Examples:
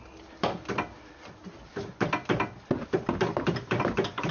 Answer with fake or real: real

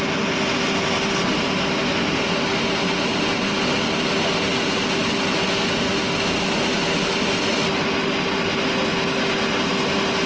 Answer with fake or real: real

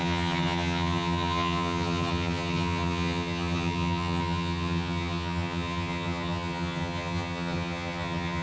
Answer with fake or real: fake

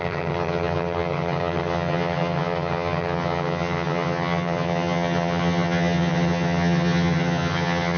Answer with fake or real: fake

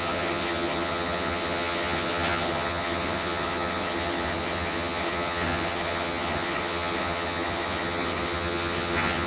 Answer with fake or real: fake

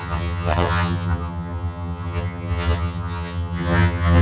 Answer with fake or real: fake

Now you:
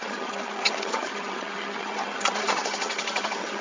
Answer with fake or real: fake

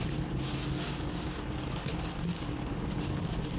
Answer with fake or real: real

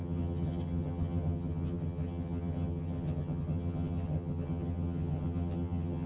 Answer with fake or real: fake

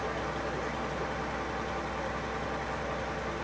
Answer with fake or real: real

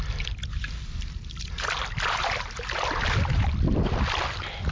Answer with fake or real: real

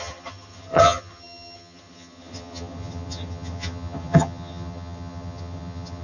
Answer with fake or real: fake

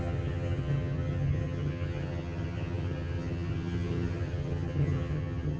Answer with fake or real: fake